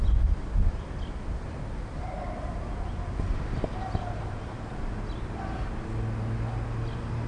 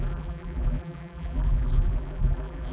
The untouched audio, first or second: first